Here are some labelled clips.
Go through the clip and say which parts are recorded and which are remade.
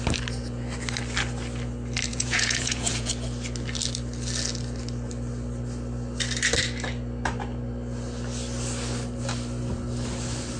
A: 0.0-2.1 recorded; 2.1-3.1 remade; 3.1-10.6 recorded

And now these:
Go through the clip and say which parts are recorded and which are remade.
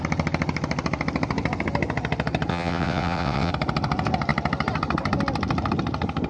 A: 0.0-2.5 recorded; 2.5-3.5 remade; 3.5-6.3 recorded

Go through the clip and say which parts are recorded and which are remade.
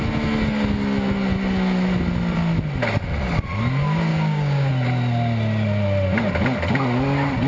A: 0.0-4.1 recorded; 4.1-4.7 remade; 4.7-7.5 recorded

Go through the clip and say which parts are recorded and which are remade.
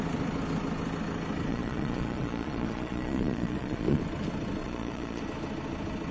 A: 0.0-1.5 recorded; 1.5-4.0 remade; 4.0-4.6 recorded; 4.6-5.2 remade; 5.2-6.1 recorded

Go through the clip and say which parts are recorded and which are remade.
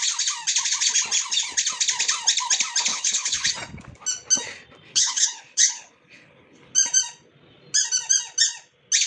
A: 0.0-2.9 recorded; 2.9-3.5 remade; 3.5-4.9 recorded; 4.9-6.7 remade; 6.7-9.1 recorded